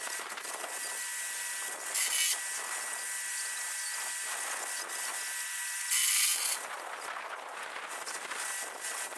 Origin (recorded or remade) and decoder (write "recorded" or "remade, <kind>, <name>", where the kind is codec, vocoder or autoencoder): recorded